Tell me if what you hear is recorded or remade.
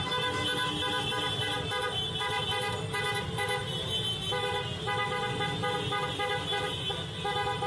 recorded